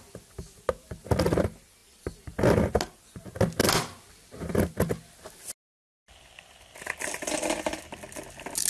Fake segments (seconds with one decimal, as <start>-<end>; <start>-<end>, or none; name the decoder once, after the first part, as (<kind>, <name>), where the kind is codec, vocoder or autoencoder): none